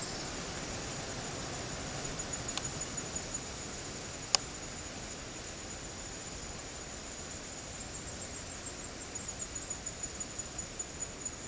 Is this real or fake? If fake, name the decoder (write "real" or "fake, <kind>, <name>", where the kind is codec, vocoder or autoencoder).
real